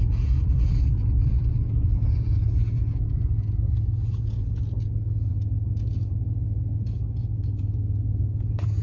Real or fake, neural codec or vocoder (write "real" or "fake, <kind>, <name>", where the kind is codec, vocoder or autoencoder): fake, vocoder, Vocos